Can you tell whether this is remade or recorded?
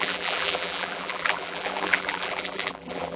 remade